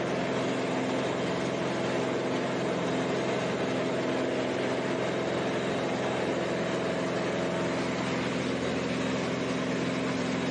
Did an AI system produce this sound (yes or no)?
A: no